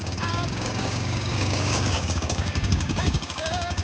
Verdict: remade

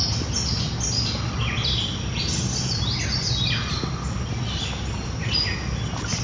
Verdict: recorded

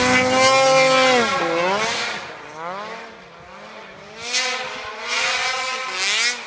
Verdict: recorded